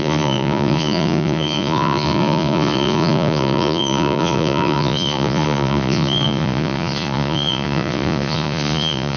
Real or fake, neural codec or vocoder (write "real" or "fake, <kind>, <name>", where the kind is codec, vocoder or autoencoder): fake, vocoder, Vocos